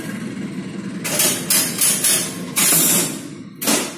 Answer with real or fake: real